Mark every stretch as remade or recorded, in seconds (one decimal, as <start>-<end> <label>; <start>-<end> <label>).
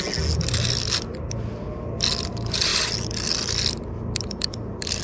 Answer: 0.0-5.0 recorded